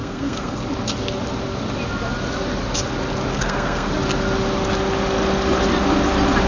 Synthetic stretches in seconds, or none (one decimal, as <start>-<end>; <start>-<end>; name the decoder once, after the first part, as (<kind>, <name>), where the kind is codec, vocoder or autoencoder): 0.0-0.6 (codec, SNAC); 3.3-3.9